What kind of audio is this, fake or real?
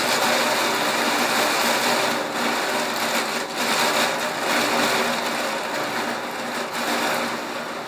real